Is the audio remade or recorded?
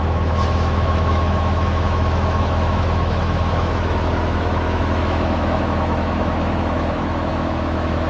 remade